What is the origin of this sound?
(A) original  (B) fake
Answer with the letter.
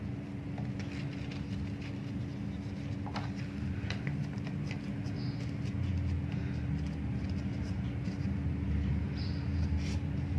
A